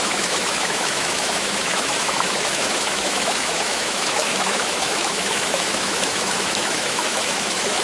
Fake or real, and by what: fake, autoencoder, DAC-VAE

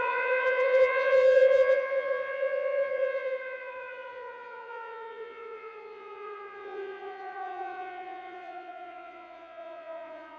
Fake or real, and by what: fake, vocoder, Vocos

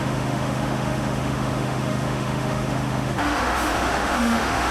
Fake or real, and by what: fake, autoencoder, DAC-VAE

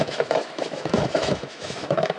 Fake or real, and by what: fake, autoencoder, DAC-VAE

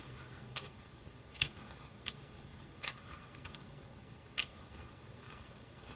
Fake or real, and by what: fake, codec, SNAC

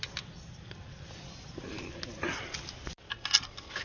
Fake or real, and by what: real